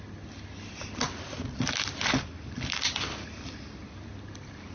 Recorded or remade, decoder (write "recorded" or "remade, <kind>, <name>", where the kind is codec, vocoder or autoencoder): recorded